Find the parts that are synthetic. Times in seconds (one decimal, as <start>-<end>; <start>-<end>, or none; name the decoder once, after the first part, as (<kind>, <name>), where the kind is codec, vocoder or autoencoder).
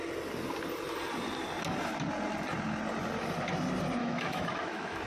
4.0-5.1 (autoencoder, DAC-VAE)